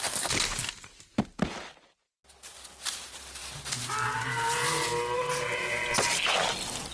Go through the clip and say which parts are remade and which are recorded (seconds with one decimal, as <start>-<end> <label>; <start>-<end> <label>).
0.0-6.9 recorded